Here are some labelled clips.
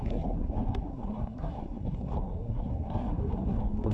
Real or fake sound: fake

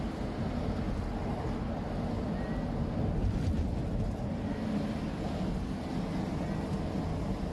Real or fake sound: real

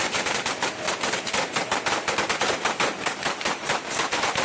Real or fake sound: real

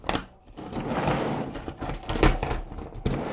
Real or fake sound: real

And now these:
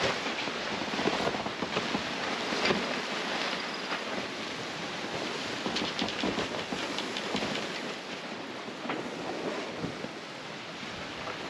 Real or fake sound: real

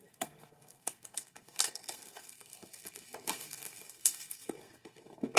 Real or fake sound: fake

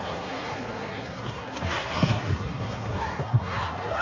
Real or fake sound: fake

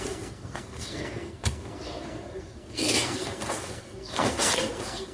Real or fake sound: fake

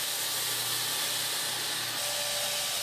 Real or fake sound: real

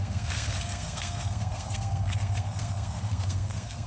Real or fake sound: fake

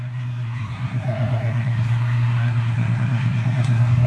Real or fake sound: fake